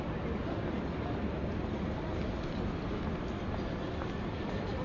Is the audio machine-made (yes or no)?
no